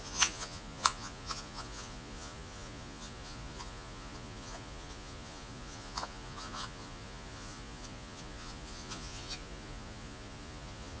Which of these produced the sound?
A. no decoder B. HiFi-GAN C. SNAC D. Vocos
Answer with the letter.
D